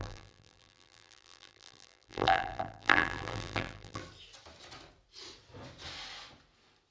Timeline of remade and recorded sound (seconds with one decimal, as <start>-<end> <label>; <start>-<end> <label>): 0.0-4.0 remade; 4.0-6.9 recorded